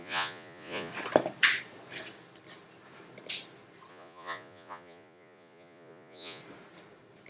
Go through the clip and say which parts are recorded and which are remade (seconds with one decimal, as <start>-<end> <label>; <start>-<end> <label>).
0.0-0.9 remade; 0.9-3.9 recorded; 3.9-6.4 remade; 6.4-7.3 recorded